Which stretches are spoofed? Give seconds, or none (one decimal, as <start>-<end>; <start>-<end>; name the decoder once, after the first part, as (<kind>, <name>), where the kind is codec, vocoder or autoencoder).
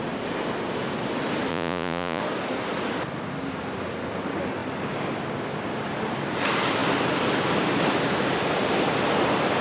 1.5-2.2 (vocoder, Vocos)